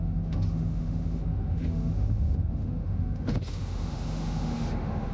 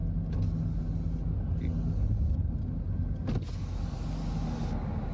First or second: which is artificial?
first